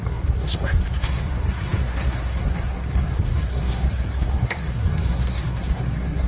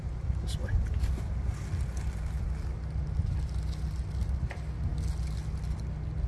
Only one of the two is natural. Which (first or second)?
second